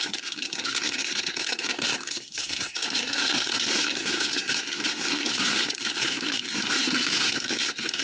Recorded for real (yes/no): no